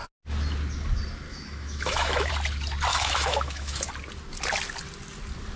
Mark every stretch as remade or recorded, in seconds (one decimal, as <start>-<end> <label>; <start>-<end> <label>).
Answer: 0.0-1.3 recorded; 1.3-2.3 remade; 2.3-2.9 recorded; 2.9-3.9 remade; 3.9-5.6 recorded